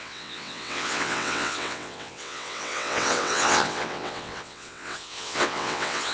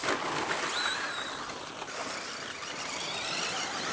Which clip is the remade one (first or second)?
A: first